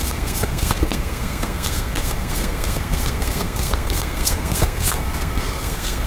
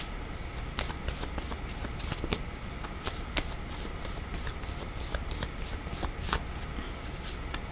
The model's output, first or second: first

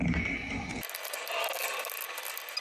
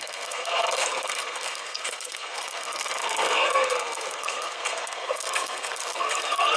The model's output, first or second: second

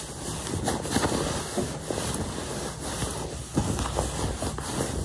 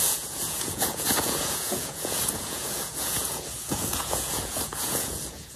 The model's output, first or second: second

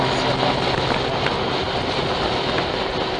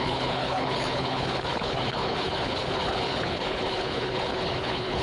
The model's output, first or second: second